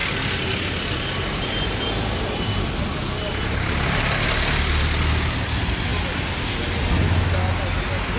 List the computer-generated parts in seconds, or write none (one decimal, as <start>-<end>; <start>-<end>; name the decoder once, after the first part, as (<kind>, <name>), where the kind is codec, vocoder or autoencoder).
none